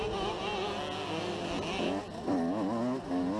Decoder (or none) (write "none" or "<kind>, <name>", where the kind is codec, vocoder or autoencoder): none